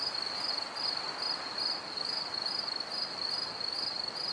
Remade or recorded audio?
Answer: recorded